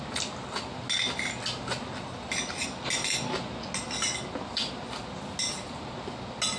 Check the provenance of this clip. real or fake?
real